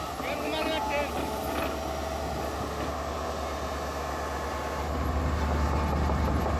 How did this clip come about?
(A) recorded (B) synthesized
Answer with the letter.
A